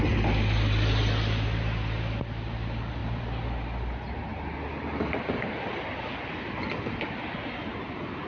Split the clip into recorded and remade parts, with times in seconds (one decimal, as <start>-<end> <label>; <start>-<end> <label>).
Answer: 0.0-3.0 recorded; 3.0-8.3 remade